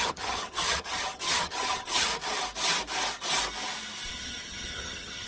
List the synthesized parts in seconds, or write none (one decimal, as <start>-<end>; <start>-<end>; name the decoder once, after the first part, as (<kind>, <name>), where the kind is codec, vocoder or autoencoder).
0.0-2.1 (vocoder, HiFi-GAN); 4.1-5.3